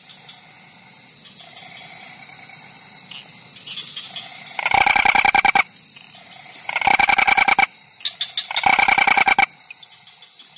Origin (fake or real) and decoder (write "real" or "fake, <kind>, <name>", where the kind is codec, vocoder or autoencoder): real